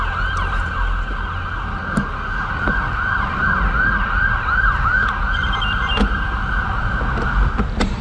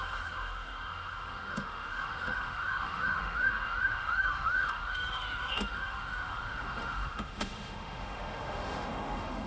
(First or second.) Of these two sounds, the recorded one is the first